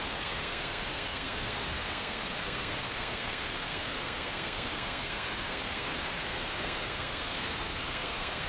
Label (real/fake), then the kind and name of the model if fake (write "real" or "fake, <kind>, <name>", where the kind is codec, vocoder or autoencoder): fake, codec, SNAC